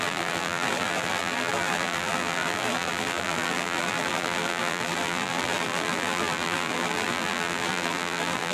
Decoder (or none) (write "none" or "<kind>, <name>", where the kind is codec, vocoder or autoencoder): vocoder, BigVGAN v2